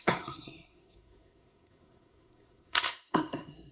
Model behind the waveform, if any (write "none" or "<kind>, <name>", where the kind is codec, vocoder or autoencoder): codec, SNAC